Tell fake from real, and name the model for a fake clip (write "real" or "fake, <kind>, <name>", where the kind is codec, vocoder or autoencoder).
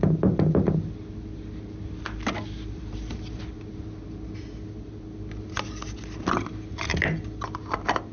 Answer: real